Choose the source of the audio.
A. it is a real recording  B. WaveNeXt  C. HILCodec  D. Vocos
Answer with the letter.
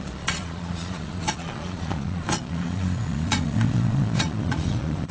D